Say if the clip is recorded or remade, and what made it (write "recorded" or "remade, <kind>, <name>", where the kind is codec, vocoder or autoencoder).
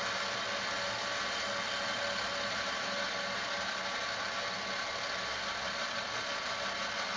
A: recorded